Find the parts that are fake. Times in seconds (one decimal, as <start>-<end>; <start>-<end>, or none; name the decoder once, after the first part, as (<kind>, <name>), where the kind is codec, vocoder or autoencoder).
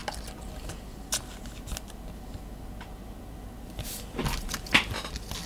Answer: none